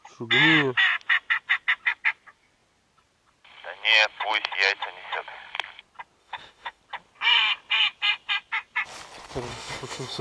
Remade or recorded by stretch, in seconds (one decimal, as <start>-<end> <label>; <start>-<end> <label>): 0.0-6.2 recorded; 6.2-6.8 remade; 6.8-9.5 recorded; 9.5-10.2 remade